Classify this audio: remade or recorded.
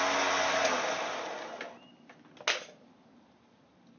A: recorded